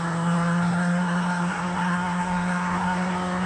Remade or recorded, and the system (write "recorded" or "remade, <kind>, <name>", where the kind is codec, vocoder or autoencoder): remade, codec, SNAC